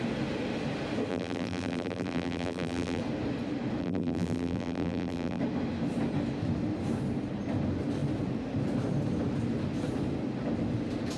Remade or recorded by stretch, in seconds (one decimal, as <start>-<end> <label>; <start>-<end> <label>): 0.0-1.1 recorded; 1.1-3.0 remade; 3.0-3.8 recorded; 3.8-5.4 remade; 5.4-11.2 recorded